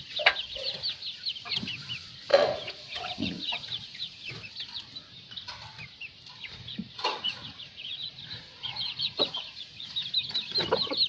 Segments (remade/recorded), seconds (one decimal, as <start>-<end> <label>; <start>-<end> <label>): 0.0-2.3 recorded; 2.3-4.3 remade; 4.3-6.6 recorded; 6.6-9.9 remade; 9.9-11.1 recorded